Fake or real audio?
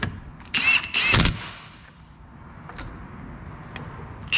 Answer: real